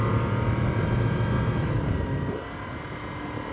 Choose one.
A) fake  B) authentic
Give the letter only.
B